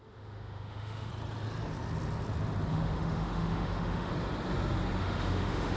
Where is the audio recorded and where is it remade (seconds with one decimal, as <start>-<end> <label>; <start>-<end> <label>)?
0.0-1.1 remade; 1.1-2.7 recorded; 2.7-4.1 remade; 4.1-5.0 recorded; 5.0-5.8 remade